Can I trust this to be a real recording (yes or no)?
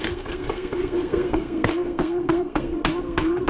no